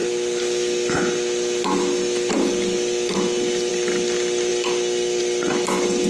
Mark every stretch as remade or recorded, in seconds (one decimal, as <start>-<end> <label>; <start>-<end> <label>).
0.0-6.1 recorded